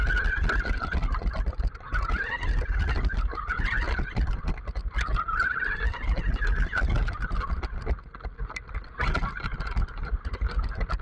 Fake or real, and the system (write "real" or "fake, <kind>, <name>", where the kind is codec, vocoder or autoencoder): real